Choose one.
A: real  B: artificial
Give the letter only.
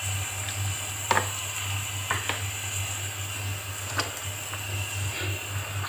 A